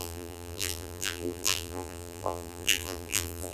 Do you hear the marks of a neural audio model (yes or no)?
yes